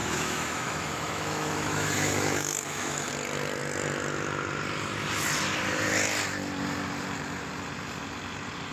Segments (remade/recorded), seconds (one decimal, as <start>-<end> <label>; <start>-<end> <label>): 0.0-3.1 remade; 3.1-8.7 recorded